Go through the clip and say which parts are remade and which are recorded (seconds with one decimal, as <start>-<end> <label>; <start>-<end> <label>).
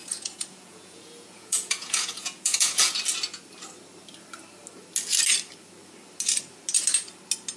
0.0-2.9 remade; 2.9-7.6 recorded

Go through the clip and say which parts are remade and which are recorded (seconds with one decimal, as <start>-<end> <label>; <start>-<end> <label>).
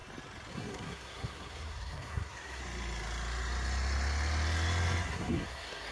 0.0-0.5 recorded; 0.5-2.6 remade; 2.6-5.1 recorded; 5.1-5.9 remade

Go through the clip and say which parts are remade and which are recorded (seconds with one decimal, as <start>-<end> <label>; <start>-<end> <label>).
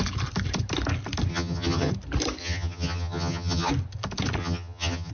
0.0-1.3 recorded; 1.3-1.9 remade; 1.9-2.4 recorded; 2.4-3.7 remade; 3.7-4.4 recorded; 4.4-5.1 remade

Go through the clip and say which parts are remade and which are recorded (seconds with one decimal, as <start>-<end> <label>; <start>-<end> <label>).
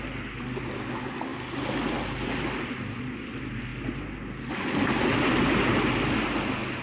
0.0-6.8 recorded